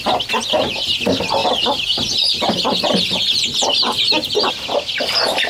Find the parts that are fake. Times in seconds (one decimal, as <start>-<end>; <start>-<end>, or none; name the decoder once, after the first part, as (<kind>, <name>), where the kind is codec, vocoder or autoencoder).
none